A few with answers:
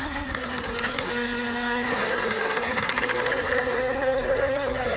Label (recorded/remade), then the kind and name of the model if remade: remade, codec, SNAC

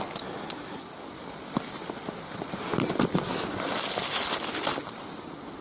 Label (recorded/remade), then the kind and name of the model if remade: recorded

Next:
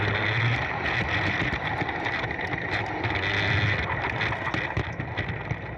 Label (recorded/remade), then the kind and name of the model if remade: recorded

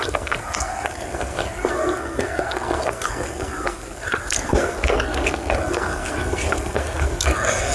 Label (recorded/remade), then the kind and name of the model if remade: remade, codec, SNAC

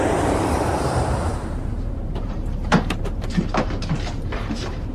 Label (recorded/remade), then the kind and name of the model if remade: remade, vocoder, BigVGAN v2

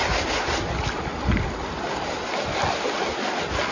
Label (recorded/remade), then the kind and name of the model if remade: recorded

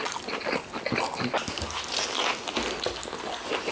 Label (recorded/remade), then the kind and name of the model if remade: recorded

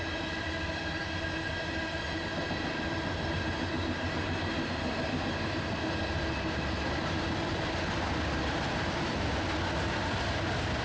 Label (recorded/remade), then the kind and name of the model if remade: recorded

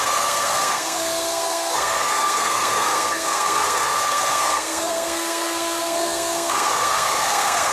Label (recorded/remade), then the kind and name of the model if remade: remade, codec, SNAC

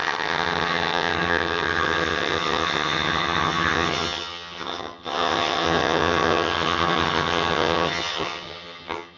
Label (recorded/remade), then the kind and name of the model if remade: remade, vocoder, HiFi-GAN